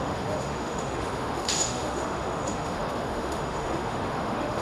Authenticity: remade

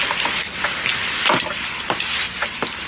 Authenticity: recorded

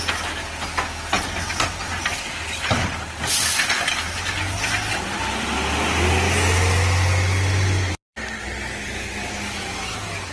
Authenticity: recorded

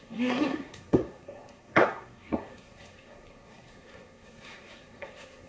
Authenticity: remade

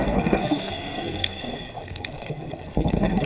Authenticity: remade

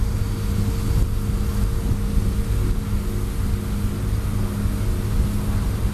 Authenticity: recorded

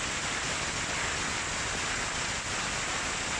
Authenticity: recorded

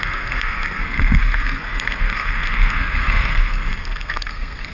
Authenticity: remade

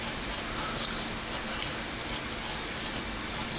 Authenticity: recorded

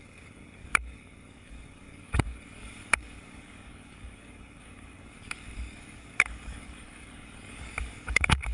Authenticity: remade